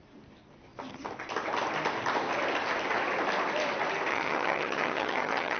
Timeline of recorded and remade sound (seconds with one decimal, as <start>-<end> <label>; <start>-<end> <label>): 0.0-4.1 recorded; 4.1-5.6 remade

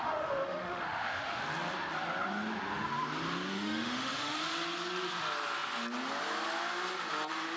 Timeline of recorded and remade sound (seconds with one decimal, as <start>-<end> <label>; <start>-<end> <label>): 0.0-1.4 remade; 1.4-3.5 recorded; 3.5-4.4 remade; 4.4-7.6 recorded

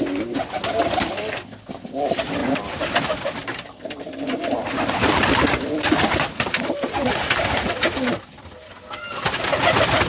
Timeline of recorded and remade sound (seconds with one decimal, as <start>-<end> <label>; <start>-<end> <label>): 0.0-2.4 recorded; 2.4-7.1 remade; 7.1-10.1 recorded

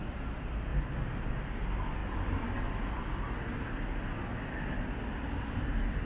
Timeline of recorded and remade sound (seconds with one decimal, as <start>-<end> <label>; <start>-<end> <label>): 0.0-6.1 recorded

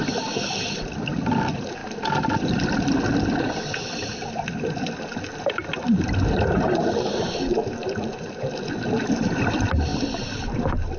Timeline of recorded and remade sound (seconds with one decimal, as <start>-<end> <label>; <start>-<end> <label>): 0.0-1.8 recorded; 1.8-3.0 remade; 3.0-7.8 recorded; 7.8-8.5 remade; 8.5-9.9 recorded; 9.9-11.0 remade

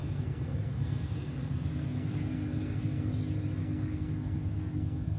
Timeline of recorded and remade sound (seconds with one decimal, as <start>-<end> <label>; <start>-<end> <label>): 0.0-3.1 remade; 3.1-3.6 recorded; 3.6-5.2 remade